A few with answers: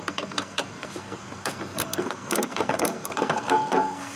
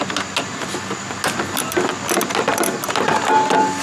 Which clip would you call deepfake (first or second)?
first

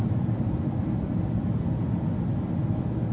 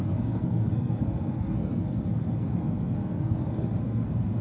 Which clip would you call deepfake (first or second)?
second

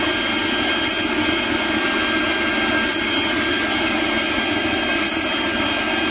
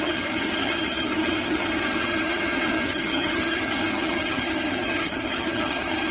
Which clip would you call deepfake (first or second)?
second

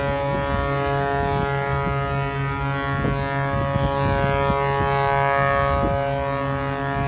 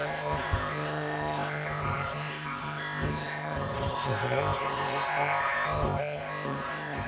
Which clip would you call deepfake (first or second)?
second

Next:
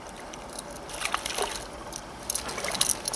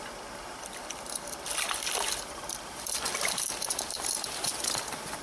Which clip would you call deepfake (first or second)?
second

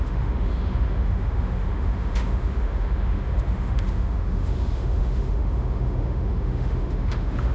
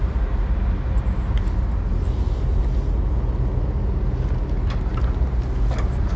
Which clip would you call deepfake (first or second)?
first